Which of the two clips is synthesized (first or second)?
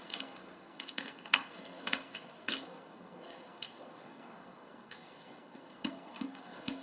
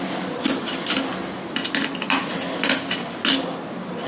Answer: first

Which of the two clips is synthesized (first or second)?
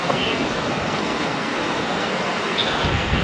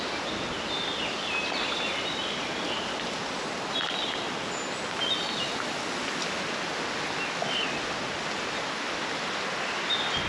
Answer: first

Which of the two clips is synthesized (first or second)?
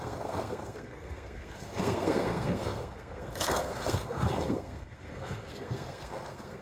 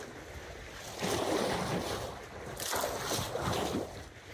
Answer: first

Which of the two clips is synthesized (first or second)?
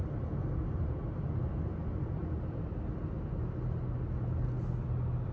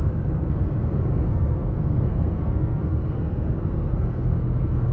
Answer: second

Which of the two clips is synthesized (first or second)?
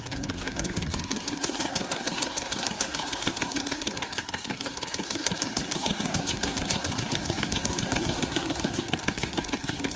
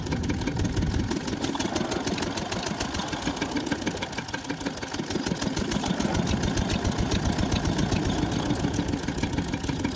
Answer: first